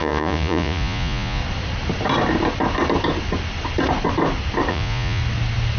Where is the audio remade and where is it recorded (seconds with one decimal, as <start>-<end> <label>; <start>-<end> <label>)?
0.0-1.4 remade; 1.4-4.7 recorded; 4.7-5.2 remade; 5.2-5.8 recorded